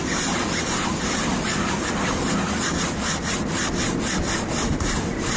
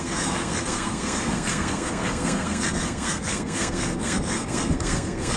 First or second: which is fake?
second